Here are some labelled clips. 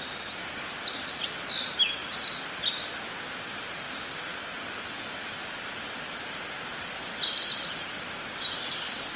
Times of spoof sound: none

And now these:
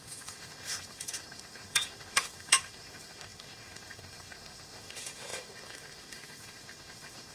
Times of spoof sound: 0.0-7.3 (autoencoder, DAC-VAE)

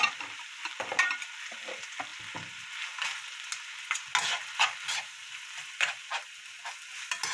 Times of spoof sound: none

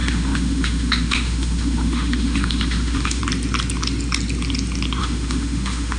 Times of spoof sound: 0.0-3.2 (autoencoder, DAC-VAE); 5.0-6.0

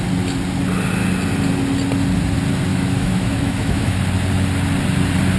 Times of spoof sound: 2.7-4.0 (autoencoder, DAC-VAE)

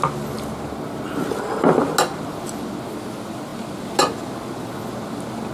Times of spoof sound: none

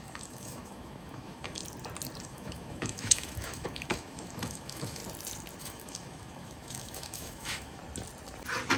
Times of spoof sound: 0.0-1.6 (autoencoder, DAC-VAE); 2.2-5.0; 5.6-7.8

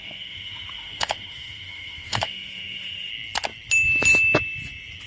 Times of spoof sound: 0.0-3.1 (autoencoder, DAC-VAE)